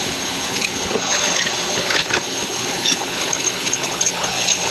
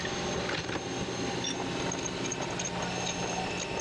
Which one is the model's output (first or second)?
first